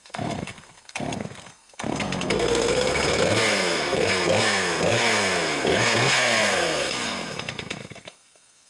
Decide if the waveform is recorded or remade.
remade